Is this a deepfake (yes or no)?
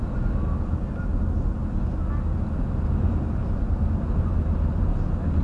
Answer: no